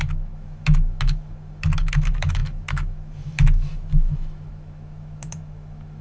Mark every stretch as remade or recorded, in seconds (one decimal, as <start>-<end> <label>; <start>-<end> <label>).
0.0-6.0 remade